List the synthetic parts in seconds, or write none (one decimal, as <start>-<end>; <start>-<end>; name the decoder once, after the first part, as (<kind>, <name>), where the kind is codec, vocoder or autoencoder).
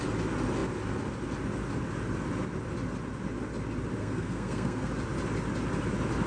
4.0-4.9 (codec, SNAC)